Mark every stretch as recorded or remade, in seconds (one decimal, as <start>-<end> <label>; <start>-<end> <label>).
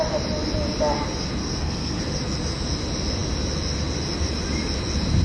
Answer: 0.0-1.4 recorded; 1.4-2.0 remade; 2.0-5.2 recorded